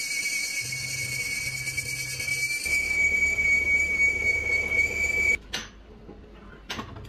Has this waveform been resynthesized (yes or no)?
no